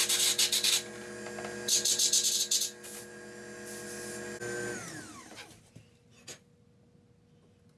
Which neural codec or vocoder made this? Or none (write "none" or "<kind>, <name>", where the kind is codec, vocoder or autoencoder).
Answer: none